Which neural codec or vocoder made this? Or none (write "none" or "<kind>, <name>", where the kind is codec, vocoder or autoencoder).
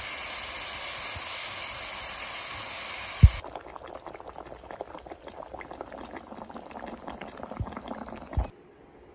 none